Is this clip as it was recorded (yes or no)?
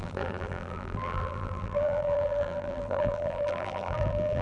no